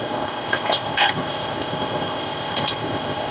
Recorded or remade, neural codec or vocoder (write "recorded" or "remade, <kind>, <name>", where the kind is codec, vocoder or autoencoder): remade, codec, ZipCodec